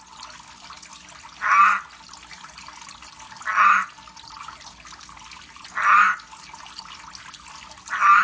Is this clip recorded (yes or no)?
yes